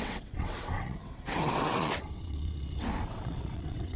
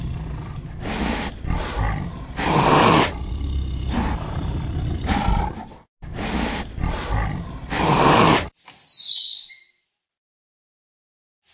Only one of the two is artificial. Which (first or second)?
first